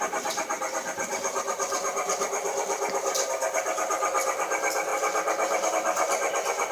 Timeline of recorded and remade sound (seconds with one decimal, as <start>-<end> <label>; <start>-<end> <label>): 0.0-4.9 remade; 4.9-5.7 recorded; 5.7-6.7 remade